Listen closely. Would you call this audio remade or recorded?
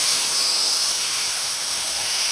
remade